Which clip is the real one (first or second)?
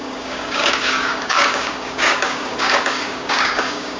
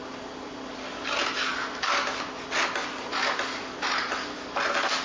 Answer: second